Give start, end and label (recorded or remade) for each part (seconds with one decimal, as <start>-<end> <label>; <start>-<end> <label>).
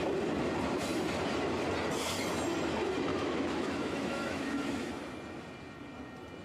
0.0-3.1 recorded; 3.1-4.9 remade; 4.9-6.4 recorded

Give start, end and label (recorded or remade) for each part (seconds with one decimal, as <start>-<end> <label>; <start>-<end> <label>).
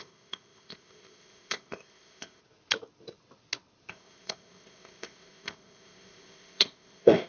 0.0-2.4 remade; 2.4-3.9 recorded; 3.9-7.3 remade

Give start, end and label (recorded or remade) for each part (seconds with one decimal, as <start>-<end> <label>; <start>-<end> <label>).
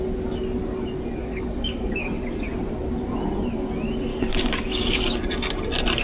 0.0-1.2 recorded; 1.2-2.1 remade; 2.1-4.1 recorded; 4.1-5.0 remade; 5.0-6.0 recorded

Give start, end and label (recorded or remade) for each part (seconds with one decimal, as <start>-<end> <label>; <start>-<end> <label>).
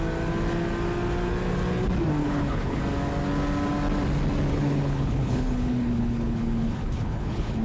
0.0-2.2 recorded; 2.2-2.8 remade; 2.8-4.5 recorded; 4.5-7.6 remade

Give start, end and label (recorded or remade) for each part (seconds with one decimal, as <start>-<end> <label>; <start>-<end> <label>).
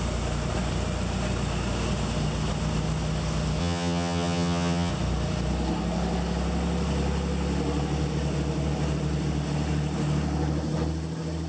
0.0-3.6 recorded; 3.6-4.9 remade; 4.9-11.5 recorded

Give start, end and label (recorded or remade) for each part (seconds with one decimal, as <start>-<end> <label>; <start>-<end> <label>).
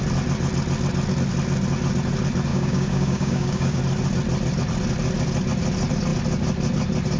0.0-2.5 recorded; 2.5-3.8 remade; 3.8-7.2 recorded